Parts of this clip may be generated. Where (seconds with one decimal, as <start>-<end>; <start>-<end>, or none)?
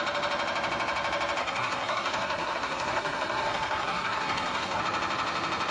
1.4-4.8